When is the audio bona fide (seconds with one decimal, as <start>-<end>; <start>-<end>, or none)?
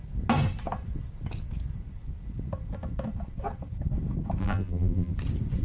0.0-4.4; 5.1-5.6